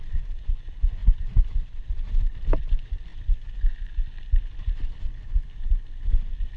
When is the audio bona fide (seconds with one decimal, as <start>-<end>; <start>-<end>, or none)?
0.0-6.6